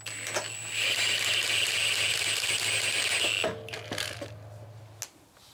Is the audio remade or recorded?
recorded